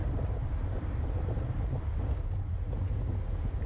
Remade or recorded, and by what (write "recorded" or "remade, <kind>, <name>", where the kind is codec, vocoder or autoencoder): recorded